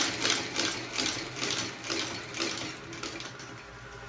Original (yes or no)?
yes